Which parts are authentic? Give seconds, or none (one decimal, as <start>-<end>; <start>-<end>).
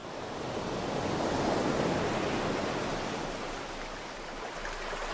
0.0-5.1